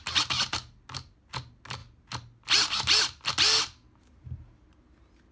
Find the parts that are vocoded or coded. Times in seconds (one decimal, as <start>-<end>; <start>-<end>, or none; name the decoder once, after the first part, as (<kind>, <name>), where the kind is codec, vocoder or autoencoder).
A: none